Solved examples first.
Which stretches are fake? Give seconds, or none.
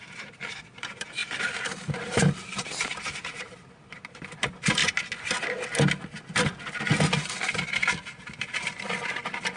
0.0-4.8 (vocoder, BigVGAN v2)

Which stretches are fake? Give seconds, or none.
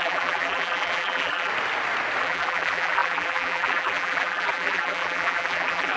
0.0-1.5 (vocoder, BigVGAN v2); 2.2-6.0